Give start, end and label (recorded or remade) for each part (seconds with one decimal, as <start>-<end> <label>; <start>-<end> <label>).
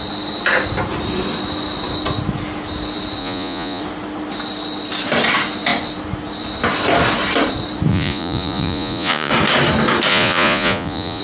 0.0-3.2 recorded; 3.2-3.8 remade; 3.8-7.9 recorded; 7.9-9.3 remade; 9.3-10.1 recorded; 10.1-11.2 remade